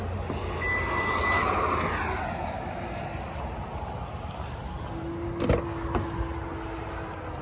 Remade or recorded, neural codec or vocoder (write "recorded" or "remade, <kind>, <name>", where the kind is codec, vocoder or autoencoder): recorded